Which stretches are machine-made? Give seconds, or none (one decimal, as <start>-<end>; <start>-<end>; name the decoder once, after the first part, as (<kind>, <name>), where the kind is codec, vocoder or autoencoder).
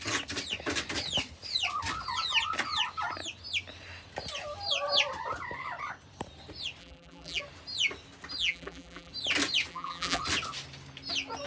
6.8-7.4 (vocoder, BigVGAN v2); 8.4-9.1; 9.7-10.2